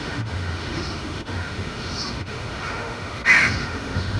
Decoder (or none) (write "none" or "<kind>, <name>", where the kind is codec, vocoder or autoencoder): autoencoder, DAC-VAE